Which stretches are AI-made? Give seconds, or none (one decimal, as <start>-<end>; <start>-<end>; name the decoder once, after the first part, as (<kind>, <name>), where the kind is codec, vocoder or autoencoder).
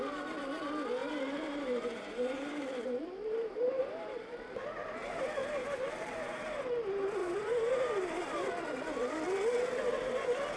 1.0-3.9 (vocoder, BigVGAN v2); 5.4-6.7; 7.2-8.5